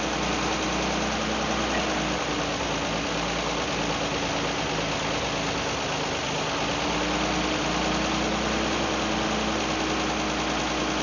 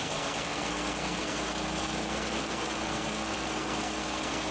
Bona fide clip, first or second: first